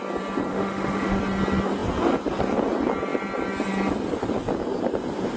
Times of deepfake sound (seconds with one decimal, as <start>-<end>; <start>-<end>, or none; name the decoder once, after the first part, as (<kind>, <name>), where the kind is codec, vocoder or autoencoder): 0.5-1.2 (autoencoder, DAC-VAE)